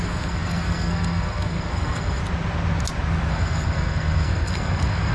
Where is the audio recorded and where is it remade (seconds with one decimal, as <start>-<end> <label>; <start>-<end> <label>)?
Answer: 0.0-2.2 remade; 2.2-3.3 recorded; 3.3-5.1 remade